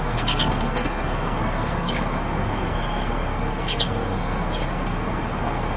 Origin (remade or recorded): remade